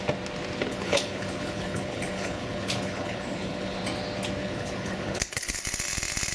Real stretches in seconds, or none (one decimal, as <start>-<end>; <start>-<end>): 0.0-0.7; 3.8-4.4; 5.6-6.3